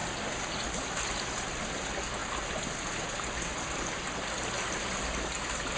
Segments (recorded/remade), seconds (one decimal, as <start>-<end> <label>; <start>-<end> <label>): 0.0-5.8 recorded